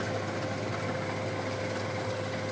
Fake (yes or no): no